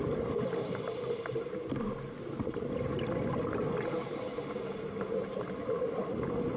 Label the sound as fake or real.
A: real